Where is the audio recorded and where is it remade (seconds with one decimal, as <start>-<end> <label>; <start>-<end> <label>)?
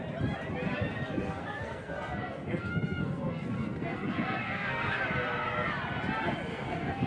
0.0-0.7 recorded; 0.7-5.0 remade; 5.0-6.5 recorded; 6.5-7.1 remade